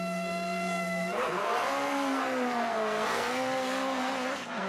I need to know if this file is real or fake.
fake